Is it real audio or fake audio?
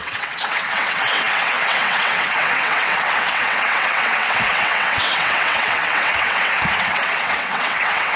fake